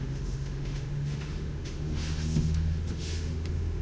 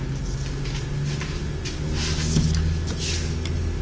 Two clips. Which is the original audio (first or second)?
second